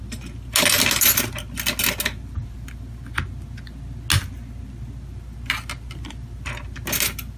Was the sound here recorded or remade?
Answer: recorded